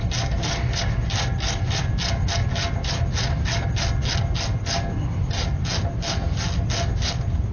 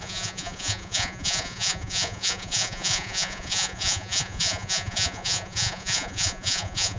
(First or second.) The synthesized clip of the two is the second